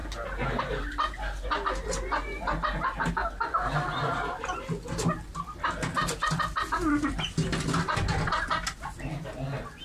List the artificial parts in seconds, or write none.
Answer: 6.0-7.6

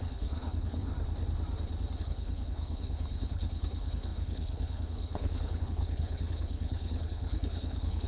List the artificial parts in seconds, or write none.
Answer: 0.0-0.9; 2.0-8.1

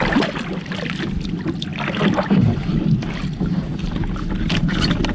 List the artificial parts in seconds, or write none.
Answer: none